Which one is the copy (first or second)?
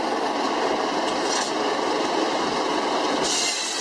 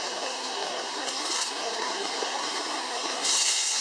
second